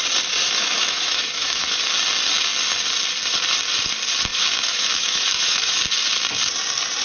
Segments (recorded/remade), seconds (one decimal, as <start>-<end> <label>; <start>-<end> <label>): 0.0-0.4 recorded; 0.4-1.8 remade; 1.8-4.3 recorded; 4.3-5.8 remade; 5.8-7.0 recorded